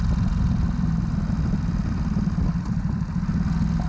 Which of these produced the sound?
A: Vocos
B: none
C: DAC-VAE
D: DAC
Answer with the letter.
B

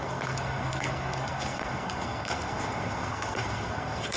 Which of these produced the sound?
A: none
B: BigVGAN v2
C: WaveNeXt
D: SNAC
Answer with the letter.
D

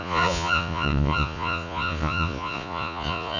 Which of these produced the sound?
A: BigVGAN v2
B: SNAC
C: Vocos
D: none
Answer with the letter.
C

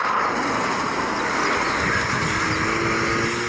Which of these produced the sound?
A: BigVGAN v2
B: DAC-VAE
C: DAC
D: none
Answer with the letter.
D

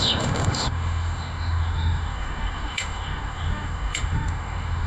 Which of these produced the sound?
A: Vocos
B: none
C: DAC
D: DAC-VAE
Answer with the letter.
D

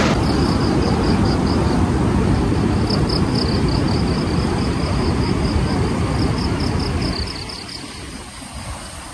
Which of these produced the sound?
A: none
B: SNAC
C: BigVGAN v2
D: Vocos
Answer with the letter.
A